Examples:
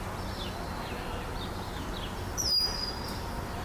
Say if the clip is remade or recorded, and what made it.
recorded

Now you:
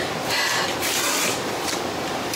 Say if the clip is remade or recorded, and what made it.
remade, vocoder, BigVGAN v2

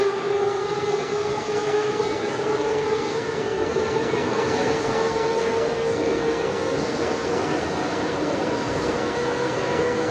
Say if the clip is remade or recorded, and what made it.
remade, codec, SNAC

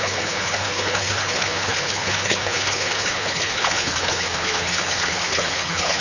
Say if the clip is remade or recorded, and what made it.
remade, codec, HILCodec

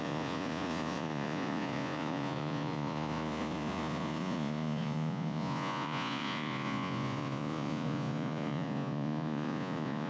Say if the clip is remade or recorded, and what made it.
remade, vocoder, Vocos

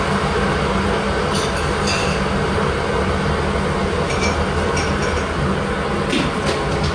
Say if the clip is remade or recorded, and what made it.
recorded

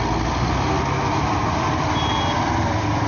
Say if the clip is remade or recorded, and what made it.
recorded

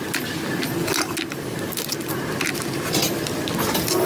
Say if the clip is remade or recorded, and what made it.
recorded